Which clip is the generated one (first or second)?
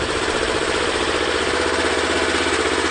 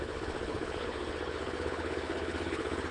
second